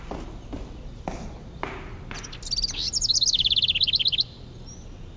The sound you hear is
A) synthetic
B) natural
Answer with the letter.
B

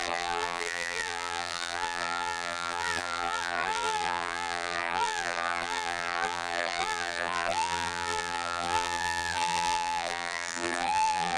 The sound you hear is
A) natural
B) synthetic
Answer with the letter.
B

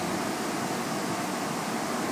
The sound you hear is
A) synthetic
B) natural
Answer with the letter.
B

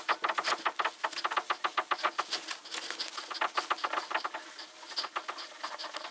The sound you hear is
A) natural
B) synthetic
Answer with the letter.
A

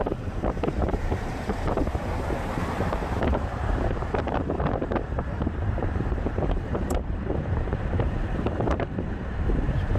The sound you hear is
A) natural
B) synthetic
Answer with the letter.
B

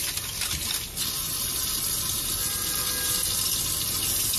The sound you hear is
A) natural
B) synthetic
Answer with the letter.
A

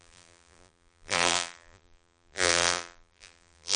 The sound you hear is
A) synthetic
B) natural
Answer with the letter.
A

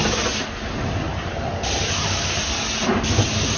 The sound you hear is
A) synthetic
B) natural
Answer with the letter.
B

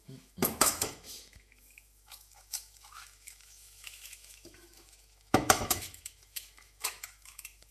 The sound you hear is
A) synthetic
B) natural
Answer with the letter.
A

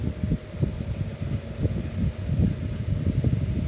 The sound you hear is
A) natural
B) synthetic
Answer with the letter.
A